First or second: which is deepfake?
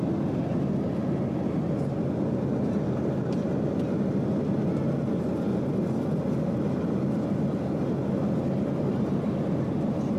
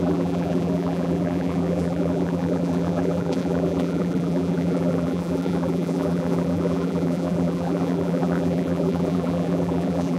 second